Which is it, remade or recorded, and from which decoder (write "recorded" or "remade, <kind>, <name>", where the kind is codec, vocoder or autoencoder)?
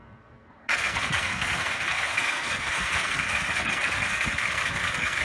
remade, codec, SNAC